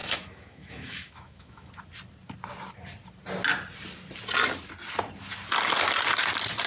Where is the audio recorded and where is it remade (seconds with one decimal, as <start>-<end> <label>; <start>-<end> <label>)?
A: 0.0-1.7 remade; 1.7-6.7 recorded